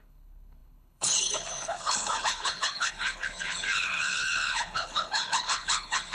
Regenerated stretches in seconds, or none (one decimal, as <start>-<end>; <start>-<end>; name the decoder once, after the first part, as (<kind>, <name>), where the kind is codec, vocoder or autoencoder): 0.0-6.1 (codec, HILCodec)